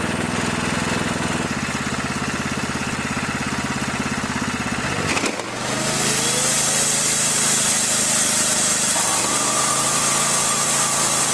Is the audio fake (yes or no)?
no